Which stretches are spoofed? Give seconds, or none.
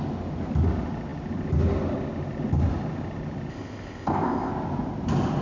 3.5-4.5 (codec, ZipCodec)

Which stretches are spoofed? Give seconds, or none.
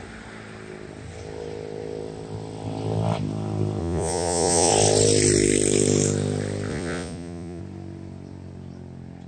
3.8-4.7 (vocoder, Vocos); 6.7-7.6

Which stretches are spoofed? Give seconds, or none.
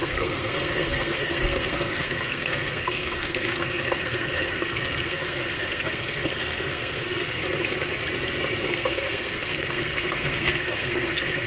0.0-7.4 (codec, SNAC); 8.6-11.5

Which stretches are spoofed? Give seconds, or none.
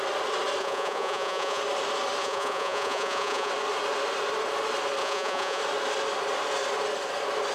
0.6-1.6 (vocoder, Vocos); 2.2-3.5; 5.0-5.6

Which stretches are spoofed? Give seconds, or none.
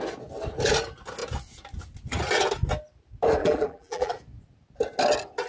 3.4-4.1 (vocoder, BigVGAN v2)